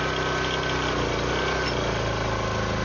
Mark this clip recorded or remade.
recorded